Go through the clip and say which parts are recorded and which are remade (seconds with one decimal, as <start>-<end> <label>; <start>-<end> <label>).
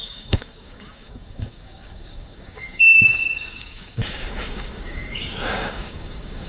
0.0-6.5 remade